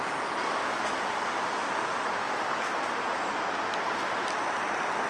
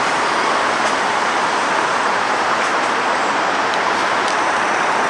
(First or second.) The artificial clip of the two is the second